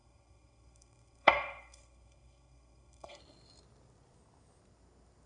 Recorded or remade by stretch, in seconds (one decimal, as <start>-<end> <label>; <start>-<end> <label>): 0.0-3.2 remade; 3.2-5.3 recorded